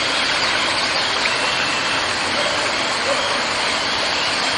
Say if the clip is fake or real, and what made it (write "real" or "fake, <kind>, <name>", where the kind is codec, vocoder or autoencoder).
real